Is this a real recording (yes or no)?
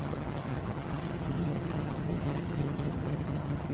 no